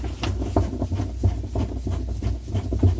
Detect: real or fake real